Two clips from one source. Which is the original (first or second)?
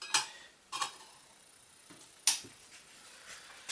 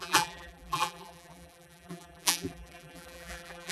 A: first